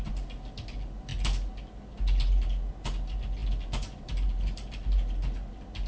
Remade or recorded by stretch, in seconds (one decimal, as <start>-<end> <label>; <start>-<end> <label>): 0.0-5.9 recorded